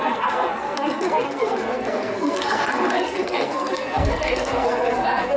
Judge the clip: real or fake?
fake